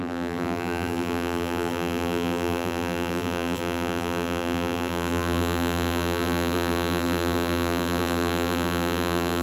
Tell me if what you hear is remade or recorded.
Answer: remade